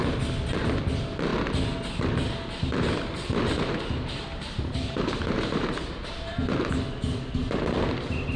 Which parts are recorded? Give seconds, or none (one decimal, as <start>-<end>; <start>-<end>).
0.0-4.3; 6.7-8.4